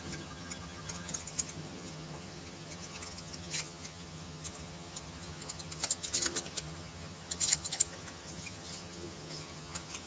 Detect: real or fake fake